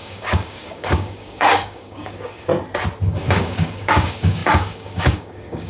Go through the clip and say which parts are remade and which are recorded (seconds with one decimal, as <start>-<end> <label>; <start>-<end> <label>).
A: 0.0-2.5 remade; 2.5-3.1 recorded; 3.1-5.7 remade